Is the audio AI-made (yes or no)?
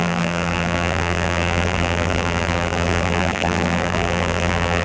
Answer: yes